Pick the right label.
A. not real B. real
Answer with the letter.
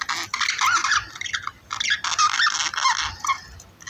B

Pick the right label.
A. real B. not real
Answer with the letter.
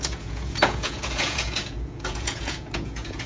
B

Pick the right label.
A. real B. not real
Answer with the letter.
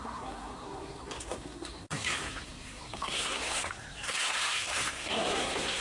B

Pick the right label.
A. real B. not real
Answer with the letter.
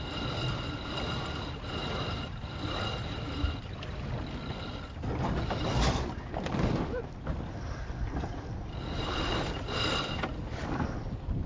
A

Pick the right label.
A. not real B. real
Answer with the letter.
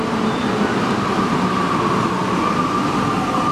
B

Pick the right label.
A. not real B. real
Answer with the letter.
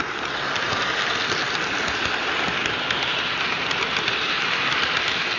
B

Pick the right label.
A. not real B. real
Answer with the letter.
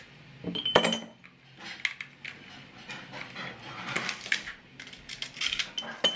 B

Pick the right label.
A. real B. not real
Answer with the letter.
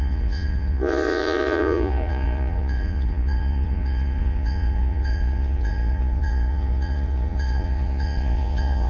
B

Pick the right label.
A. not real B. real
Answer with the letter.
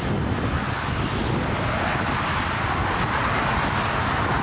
B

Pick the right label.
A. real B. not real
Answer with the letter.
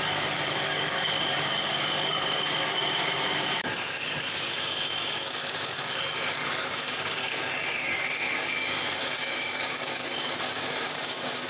B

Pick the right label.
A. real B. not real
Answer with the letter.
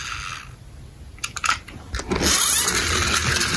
A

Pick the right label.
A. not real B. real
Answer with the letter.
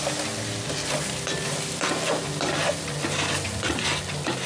B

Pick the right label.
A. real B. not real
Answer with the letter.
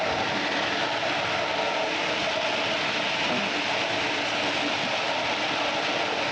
A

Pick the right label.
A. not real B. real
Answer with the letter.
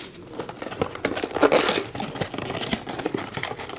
A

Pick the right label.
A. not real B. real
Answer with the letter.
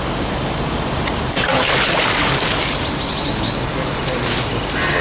B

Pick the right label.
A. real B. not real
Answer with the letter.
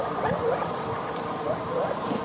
A